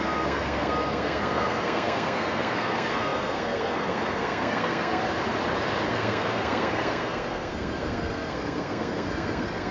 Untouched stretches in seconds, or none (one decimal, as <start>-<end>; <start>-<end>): 5.0-5.9